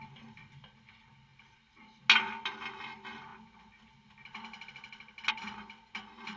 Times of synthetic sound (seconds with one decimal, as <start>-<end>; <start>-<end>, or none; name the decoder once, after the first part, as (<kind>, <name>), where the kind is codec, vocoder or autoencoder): none